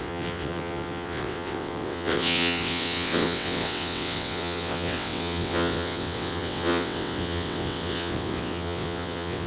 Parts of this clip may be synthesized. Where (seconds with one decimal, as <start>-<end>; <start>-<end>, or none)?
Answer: 0.0-9.5

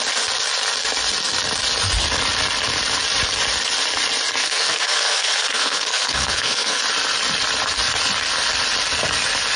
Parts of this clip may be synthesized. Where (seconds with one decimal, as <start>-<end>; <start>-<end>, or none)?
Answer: 4.4-6.8

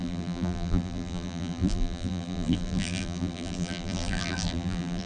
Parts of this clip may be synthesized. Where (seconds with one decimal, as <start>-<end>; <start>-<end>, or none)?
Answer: 0.0-5.1